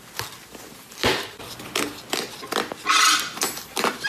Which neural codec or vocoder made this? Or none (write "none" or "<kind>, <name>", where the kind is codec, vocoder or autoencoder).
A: none